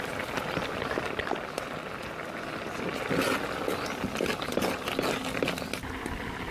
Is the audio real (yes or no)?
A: yes